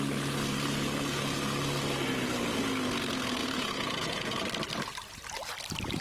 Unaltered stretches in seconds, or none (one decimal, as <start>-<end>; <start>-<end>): 0.0-3.4; 4.4-6.0